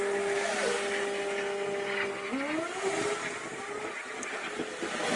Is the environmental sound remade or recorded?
recorded